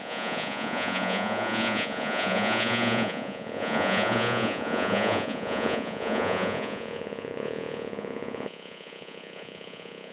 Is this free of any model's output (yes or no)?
no